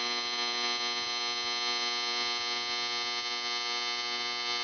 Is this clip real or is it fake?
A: real